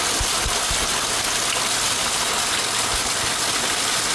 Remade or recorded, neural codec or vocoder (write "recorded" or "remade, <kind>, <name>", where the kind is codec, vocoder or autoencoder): recorded